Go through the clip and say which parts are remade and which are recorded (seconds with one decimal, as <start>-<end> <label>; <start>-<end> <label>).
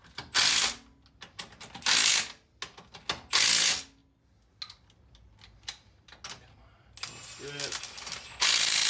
0.0-8.9 recorded